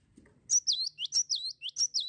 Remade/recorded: recorded